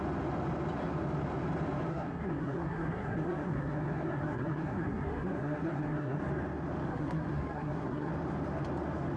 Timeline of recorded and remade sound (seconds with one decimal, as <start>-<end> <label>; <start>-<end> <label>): 0.0-1.9 recorded; 1.9-6.2 remade; 6.2-6.9 recorded; 6.9-8.1 remade; 8.1-9.2 recorded